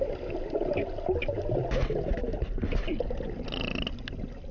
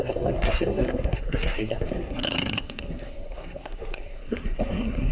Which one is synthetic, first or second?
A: second